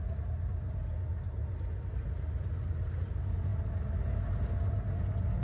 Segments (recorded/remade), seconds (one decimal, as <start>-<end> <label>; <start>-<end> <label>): 0.0-5.4 recorded